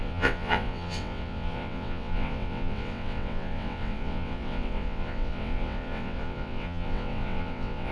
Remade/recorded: remade